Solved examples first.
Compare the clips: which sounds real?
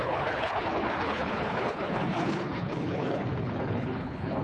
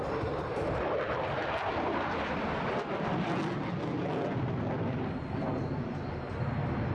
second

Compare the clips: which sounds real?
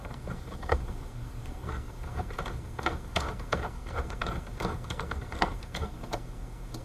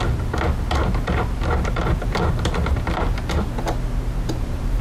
second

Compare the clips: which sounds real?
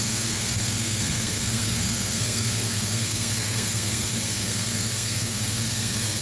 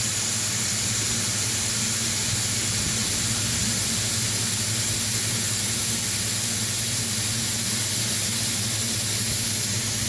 second